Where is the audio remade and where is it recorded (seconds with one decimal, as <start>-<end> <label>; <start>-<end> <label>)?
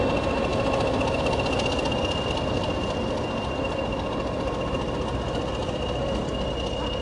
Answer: 0.0-7.0 recorded